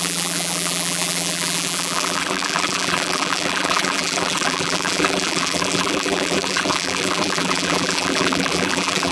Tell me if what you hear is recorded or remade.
remade